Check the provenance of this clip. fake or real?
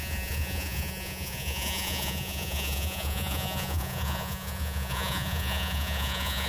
fake